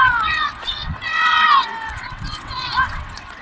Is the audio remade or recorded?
remade